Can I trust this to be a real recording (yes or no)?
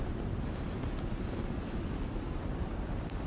yes